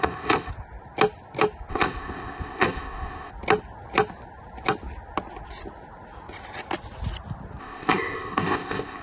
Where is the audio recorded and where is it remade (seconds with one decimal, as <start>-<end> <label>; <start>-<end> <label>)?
0.0-0.5 remade; 0.5-1.7 recorded; 1.7-3.3 remade; 3.3-7.6 recorded; 7.6-9.0 remade